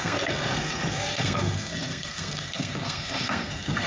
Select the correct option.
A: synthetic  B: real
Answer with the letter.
A